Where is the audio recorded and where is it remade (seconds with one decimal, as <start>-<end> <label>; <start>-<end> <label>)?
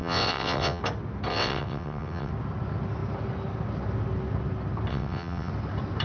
0.0-0.8 remade; 0.8-1.3 recorded; 1.3-2.3 remade; 2.3-4.9 recorded; 4.9-5.5 remade; 5.5-6.0 recorded